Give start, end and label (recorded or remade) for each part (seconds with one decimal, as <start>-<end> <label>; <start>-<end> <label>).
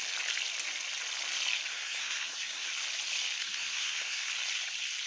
0.0-1.7 recorded; 1.7-2.7 remade; 2.7-3.4 recorded; 3.4-4.3 remade; 4.3-5.1 recorded